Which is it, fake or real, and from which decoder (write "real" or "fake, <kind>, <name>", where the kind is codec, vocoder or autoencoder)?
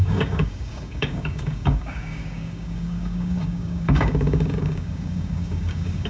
fake, codec, DAC